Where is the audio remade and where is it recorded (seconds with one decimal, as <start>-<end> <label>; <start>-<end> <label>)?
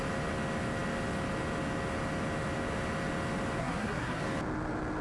0.0-3.6 recorded; 3.6-4.2 remade; 4.2-5.0 recorded